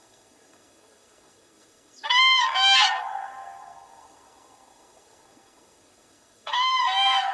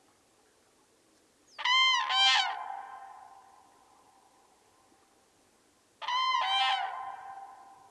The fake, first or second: first